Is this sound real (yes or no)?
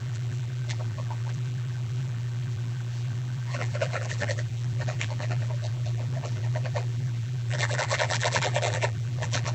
no